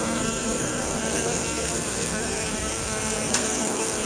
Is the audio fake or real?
fake